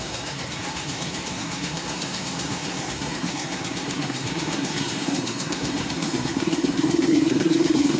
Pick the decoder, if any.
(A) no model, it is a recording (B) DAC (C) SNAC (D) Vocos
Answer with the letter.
C